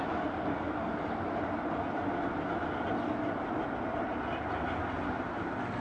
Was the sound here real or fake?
real